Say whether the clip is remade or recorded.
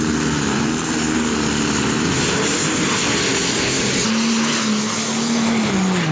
recorded